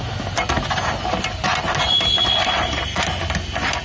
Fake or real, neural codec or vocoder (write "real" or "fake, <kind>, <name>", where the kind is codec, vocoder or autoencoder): real